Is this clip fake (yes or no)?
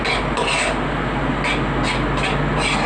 no